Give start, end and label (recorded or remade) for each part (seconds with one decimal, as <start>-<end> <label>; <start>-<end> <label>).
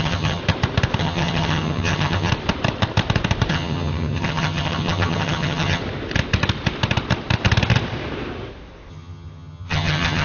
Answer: 0.0-0.4 remade; 0.4-1.0 recorded; 1.0-2.3 remade; 2.3-3.5 recorded; 3.5-5.8 remade; 5.8-8.9 recorded; 8.9-10.2 remade